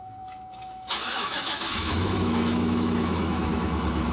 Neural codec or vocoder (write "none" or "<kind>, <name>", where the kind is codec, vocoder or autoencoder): autoencoder, DAC-VAE